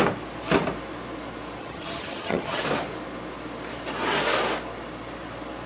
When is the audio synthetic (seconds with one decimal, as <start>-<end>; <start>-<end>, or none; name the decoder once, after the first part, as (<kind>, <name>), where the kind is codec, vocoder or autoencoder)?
1.6-2.6 (vocoder, HiFi-GAN)